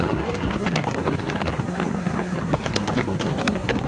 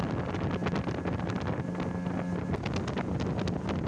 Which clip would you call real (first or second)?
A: second